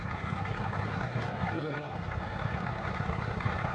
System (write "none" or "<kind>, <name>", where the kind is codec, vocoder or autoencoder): codec, SNAC